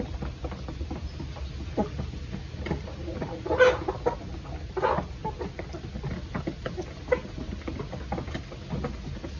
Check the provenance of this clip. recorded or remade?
recorded